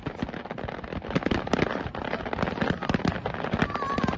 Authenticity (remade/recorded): recorded